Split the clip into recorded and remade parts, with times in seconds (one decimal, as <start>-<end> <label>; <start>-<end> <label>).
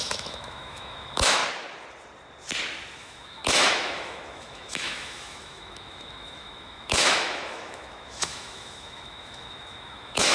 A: 0.0-1.4 remade; 1.4-3.0 recorded; 3.0-10.3 remade